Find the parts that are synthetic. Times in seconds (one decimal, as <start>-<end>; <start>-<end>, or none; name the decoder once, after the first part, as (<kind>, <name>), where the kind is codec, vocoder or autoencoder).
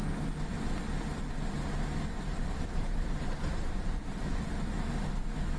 2.3-4.9 (vocoder, BigVGAN v2)